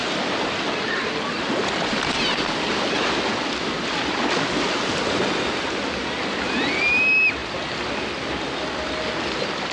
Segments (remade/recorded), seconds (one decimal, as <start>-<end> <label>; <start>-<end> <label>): 0.0-9.7 recorded